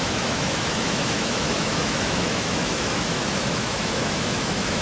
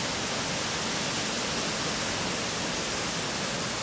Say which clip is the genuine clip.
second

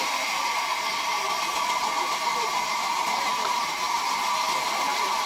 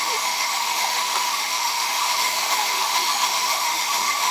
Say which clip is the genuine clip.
first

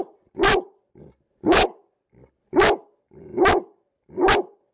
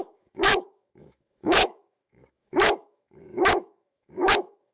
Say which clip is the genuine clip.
first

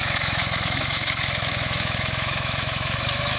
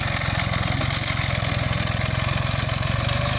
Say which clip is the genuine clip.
second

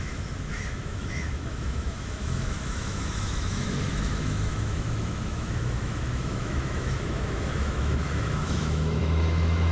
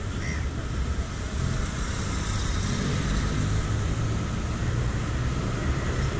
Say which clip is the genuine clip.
second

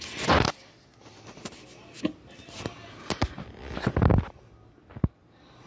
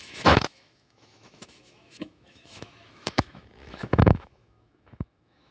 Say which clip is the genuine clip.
first